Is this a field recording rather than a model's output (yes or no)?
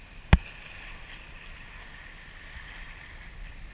yes